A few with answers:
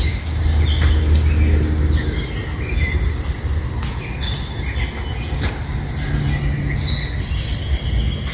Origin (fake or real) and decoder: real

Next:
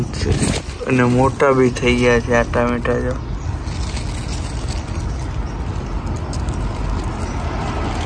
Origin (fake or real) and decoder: real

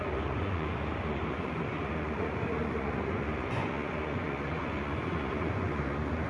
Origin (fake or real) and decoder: fake, vocoder, Vocos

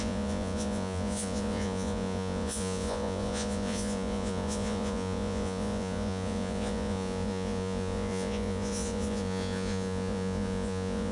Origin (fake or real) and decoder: fake, vocoder, Vocos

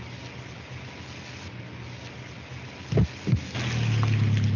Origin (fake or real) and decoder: real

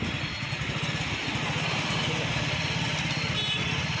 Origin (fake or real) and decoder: real